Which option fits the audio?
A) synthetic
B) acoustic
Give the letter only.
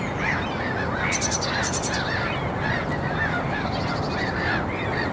B